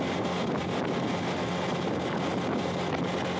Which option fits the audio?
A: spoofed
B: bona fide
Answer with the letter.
B